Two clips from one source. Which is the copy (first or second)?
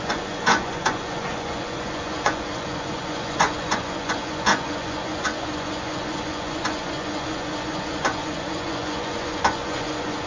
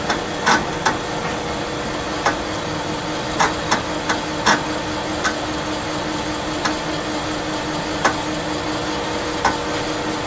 first